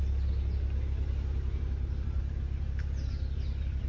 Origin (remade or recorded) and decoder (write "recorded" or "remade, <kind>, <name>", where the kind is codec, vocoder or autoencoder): recorded